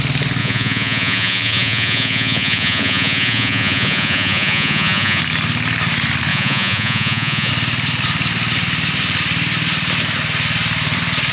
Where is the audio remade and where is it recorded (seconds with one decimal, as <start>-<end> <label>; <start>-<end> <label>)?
0.0-0.4 recorded; 0.4-5.2 remade; 5.2-6.3 recorded; 6.3-7.5 remade; 7.5-11.3 recorded

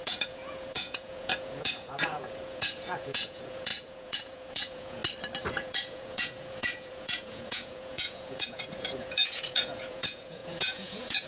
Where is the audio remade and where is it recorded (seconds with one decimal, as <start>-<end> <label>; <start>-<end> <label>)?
0.0-5.0 remade; 5.0-5.5 recorded; 5.5-11.3 remade

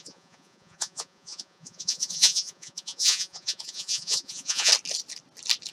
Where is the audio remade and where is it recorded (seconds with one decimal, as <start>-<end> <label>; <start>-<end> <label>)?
0.0-4.7 remade; 4.7-5.7 recorded

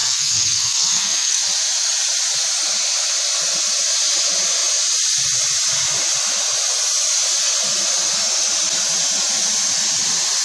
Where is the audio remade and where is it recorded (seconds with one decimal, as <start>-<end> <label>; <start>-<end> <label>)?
0.0-1.4 remade; 1.4-10.4 recorded